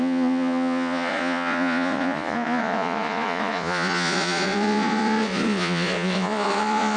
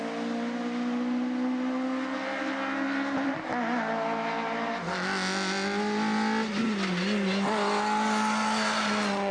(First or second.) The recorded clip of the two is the second